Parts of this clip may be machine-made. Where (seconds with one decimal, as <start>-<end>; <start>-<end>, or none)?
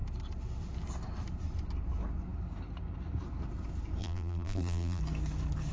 4.0-5.0